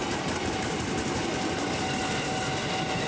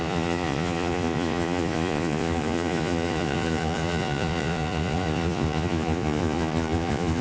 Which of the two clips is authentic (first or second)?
first